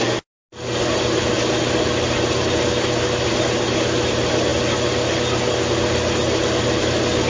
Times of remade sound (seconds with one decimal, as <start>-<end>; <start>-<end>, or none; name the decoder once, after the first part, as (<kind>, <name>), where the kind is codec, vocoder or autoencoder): none